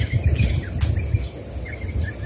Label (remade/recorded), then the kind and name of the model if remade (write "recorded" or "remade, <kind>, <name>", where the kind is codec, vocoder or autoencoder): recorded